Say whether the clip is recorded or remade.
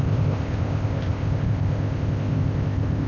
remade